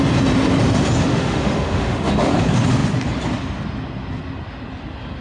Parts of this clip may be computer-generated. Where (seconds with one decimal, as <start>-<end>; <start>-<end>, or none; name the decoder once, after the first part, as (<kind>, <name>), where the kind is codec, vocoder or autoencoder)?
1.1-2.3 (autoencoder, DAC-VAE)